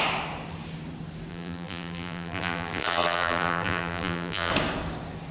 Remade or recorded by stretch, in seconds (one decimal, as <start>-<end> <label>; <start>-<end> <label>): 0.0-1.3 recorded; 1.3-4.5 remade; 4.5-5.3 recorded